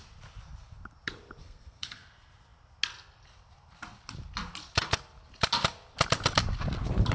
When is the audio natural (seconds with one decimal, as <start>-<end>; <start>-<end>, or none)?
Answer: 0.0-1.4; 2.0-7.1